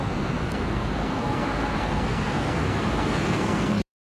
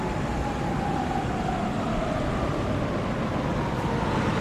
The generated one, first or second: first